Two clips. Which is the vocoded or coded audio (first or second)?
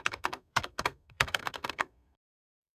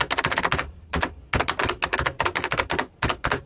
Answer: first